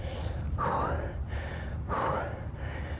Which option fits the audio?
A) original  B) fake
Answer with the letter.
A